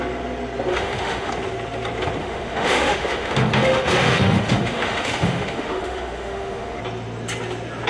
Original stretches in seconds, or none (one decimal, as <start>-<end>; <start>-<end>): 0.0-0.7; 1.3-2.2; 6.8-7.9